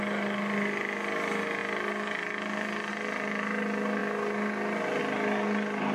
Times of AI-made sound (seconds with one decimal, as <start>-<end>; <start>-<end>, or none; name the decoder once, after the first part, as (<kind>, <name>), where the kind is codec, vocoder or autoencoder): none